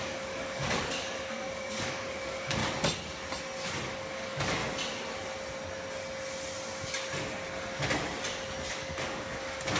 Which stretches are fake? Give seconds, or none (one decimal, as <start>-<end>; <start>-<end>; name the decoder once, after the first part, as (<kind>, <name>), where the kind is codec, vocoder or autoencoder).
0.0-2.6 (codec, DAC); 4.0-4.6; 8.7-9.8